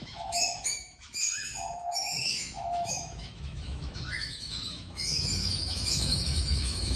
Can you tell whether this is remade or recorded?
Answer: remade